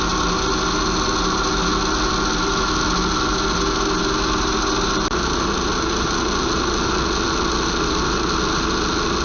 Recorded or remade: recorded